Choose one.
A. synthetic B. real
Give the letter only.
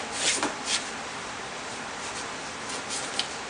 B